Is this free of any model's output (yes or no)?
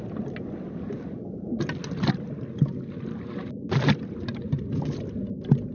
yes